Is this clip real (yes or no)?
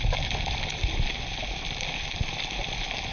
yes